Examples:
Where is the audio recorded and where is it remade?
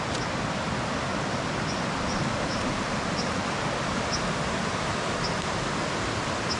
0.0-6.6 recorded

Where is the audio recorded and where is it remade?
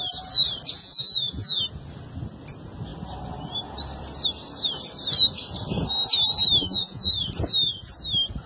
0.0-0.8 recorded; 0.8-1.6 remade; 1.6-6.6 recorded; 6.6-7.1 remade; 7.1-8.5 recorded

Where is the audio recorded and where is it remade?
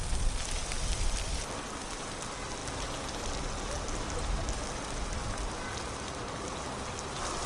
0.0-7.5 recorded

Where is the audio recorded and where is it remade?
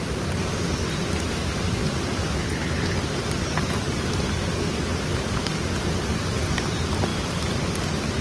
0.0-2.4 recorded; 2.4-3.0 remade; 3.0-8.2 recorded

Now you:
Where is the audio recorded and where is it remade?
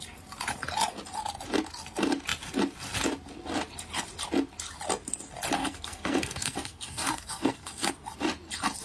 0.0-5.6 recorded; 5.6-7.9 remade; 7.9-8.8 recorded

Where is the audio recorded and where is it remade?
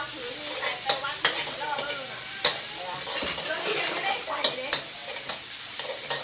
0.0-6.2 recorded